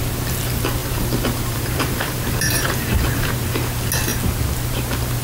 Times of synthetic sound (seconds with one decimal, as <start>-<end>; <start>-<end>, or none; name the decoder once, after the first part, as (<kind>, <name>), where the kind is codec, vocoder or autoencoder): 0.8-3.3 (vocoder, BigVGAN v2)